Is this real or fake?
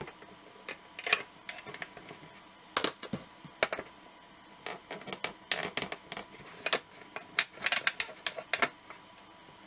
real